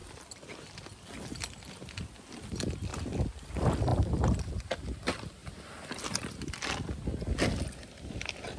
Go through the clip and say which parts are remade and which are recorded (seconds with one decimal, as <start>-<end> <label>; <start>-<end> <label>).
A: 0.0-8.6 recorded